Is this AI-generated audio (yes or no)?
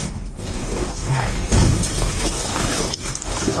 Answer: yes